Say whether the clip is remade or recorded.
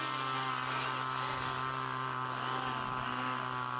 recorded